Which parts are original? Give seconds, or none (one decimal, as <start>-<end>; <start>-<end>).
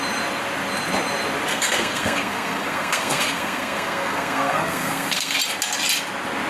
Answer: 0.0-1.5; 5.4-6.5